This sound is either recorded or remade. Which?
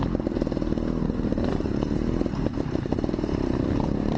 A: remade